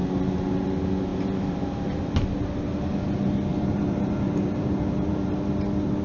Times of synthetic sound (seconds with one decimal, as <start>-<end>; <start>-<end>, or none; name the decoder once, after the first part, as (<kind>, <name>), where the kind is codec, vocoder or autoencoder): 3.5-5.4 (vocoder, BigVGAN v2)

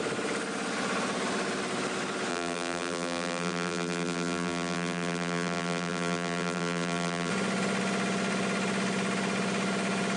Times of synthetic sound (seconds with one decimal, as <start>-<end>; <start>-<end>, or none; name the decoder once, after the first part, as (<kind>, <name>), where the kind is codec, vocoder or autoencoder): 2.3-7.3 (vocoder, BigVGAN v2)

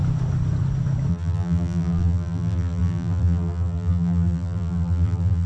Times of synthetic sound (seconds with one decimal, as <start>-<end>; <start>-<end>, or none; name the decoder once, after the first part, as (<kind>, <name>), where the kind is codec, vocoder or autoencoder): 1.1-5.5 (vocoder, BigVGAN v2)

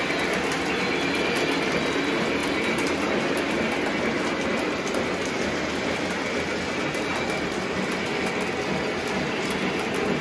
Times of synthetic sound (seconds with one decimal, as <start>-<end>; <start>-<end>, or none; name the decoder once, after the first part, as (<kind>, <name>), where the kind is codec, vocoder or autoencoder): 7.1-7.9 (vocoder, BigVGAN v2)

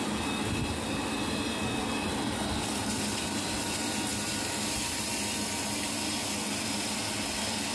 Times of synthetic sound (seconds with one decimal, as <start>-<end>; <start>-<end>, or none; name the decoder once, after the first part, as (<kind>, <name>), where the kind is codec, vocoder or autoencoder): 4.1-5.1 (vocoder, BigVGAN v2)